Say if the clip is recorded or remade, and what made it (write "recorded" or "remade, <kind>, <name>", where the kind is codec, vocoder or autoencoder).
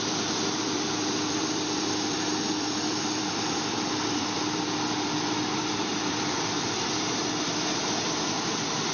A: remade, vocoder, BigVGAN v2